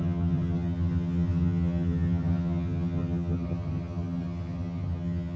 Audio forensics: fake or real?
fake